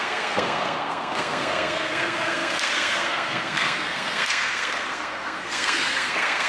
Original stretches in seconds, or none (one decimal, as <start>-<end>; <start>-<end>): none